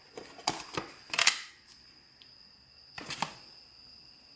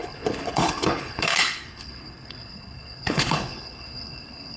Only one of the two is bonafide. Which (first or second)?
first